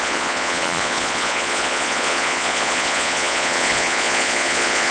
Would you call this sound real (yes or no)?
no